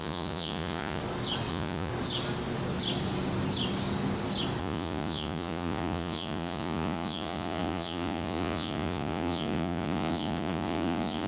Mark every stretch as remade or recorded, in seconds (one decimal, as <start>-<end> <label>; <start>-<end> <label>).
0.0-1.0 remade; 1.0-1.5 recorded; 1.5-1.9 remade; 1.9-4.6 recorded; 4.6-11.3 remade